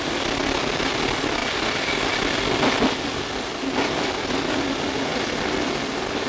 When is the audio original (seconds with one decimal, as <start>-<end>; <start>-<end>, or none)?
0.0-6.3